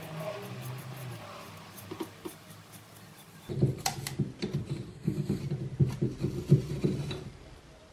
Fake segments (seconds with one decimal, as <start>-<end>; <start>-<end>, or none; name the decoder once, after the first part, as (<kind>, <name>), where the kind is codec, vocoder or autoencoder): 4.9-5.4 (codec, SNAC)